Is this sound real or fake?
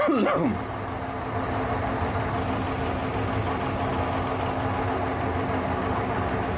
real